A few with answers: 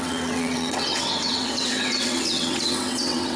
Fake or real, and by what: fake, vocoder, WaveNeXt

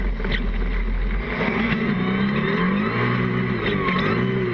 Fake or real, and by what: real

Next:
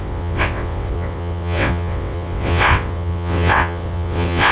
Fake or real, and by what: fake, vocoder, WaveNeXt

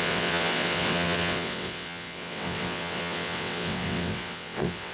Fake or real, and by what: fake, vocoder, WaveNeXt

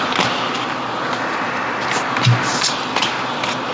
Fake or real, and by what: real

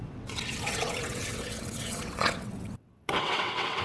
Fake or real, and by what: fake, vocoder, WaveNeXt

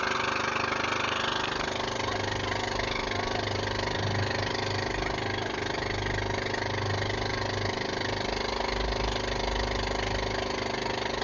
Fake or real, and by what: real